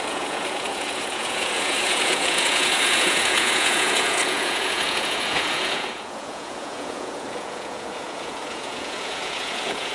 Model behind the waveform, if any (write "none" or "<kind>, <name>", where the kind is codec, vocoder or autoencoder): vocoder, Vocos